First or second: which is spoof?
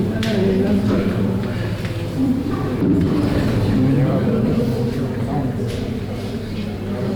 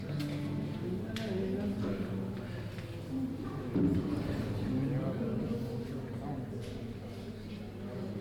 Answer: first